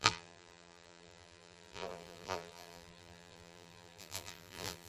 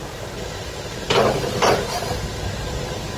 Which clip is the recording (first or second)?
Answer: second